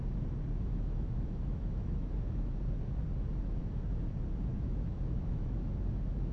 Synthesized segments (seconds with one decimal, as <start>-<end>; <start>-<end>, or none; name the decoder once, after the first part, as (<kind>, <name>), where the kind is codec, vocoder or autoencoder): 0.7-2.5 (autoencoder, DAC-VAE); 4.5-5.7